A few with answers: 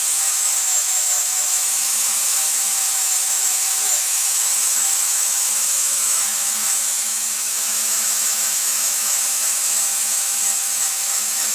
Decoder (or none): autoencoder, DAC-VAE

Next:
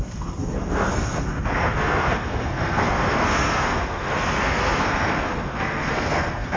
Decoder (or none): codec, SNAC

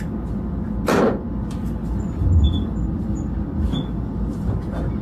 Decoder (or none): none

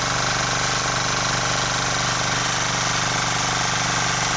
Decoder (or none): none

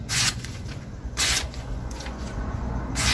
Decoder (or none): vocoder, Vocos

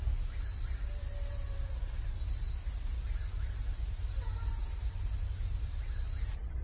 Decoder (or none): none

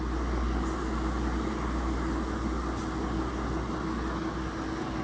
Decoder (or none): none